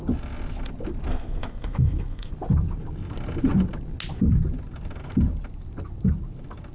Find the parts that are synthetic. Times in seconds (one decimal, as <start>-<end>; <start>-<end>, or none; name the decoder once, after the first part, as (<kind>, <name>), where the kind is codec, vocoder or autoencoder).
1.1-2.3 (codec, SNAC)

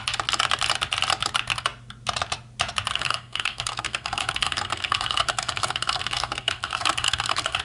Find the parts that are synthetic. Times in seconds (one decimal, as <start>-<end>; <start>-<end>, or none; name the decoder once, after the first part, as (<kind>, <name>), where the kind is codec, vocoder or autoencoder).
2.9-7.6 (codec, SNAC)

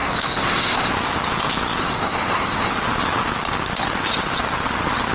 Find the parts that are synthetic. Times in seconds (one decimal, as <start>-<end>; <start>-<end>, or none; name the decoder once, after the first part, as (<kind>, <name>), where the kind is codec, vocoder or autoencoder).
0.0-0.9 (codec, SNAC); 1.8-2.7

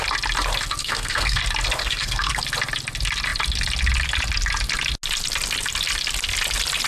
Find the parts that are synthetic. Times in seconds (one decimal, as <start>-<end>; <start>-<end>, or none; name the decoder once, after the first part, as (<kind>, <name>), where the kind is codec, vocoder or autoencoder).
0.8-1.4 (codec, SNAC); 1.8-2.4

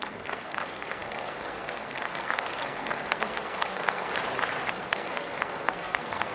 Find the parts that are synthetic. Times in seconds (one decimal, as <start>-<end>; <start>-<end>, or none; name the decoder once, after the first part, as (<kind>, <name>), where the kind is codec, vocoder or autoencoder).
0.0-4.1 (codec, SNAC); 4.7-6.3

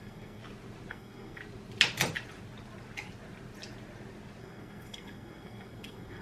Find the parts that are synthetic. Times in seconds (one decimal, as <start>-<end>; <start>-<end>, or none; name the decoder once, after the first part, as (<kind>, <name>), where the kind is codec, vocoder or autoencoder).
0.0-0.4 (codec, SNAC); 0.9-1.4; 4.4-6.2

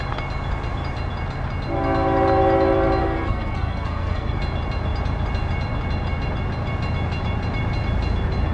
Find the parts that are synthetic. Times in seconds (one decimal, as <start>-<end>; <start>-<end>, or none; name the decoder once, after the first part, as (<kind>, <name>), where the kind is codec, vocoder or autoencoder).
3.0-4.4 (codec, SNAC)